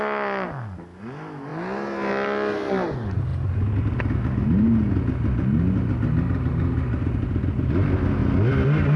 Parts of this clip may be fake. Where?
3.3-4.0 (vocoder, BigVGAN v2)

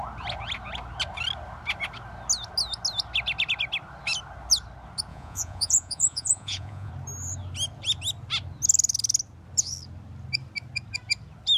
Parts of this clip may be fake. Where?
5.1-6.9 (vocoder, Vocos)

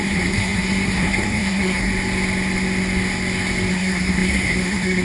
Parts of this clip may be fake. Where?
0.0-1.9 (codec, SNAC); 3.7-5.0

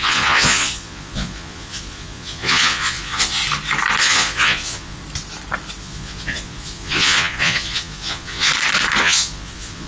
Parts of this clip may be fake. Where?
0.0-3.4 (vocoder, Vocos); 4.0-5.0; 5.8-8.5; 9.0-9.9

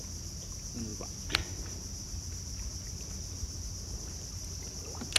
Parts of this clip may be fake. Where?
none

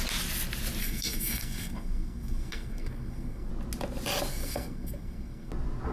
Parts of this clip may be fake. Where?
0.8-3.5 (codec, SNAC); 4.3-5.5

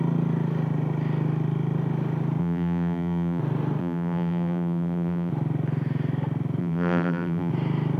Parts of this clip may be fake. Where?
2.4-3.4 (vocoder, BigVGAN v2); 3.8-5.3; 6.6-7.5